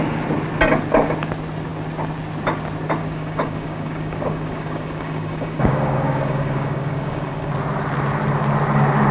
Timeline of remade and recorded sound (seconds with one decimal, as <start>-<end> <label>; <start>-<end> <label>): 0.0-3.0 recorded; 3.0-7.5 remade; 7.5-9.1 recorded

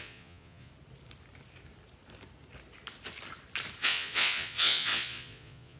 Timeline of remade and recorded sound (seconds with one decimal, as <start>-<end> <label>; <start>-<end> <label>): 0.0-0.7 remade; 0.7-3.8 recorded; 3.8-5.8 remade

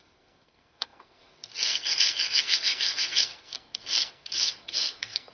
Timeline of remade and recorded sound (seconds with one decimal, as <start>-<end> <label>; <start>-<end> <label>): 0.0-5.3 remade

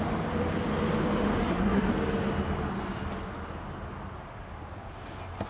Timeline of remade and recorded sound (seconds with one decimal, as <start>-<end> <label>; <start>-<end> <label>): 0.0-1.4 recorded; 1.4-1.9 remade; 1.9-5.5 recorded

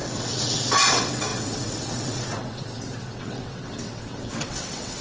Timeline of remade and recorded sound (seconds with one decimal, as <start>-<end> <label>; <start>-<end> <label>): 0.0-5.0 remade

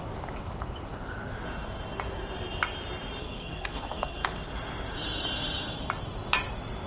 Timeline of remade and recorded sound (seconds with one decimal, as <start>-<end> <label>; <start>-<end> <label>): 0.0-3.2 recorded; 3.2-4.2 remade; 4.2-6.9 recorded